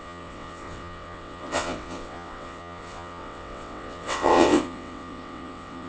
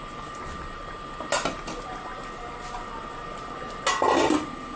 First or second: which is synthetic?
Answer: first